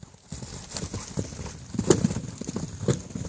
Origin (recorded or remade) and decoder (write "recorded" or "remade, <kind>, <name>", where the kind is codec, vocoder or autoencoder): recorded